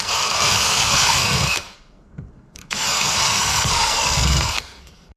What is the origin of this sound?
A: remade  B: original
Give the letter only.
A